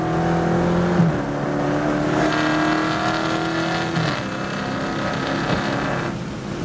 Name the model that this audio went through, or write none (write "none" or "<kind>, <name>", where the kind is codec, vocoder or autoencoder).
none